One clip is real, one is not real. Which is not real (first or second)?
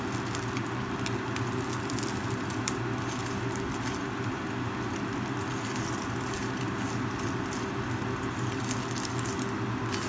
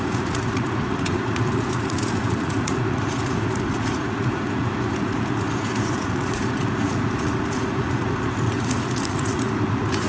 second